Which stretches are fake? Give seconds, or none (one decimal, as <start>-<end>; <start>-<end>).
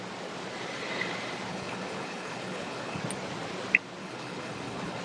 1.5-3.0; 4.0-5.0